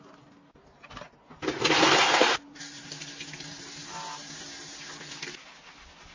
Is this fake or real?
real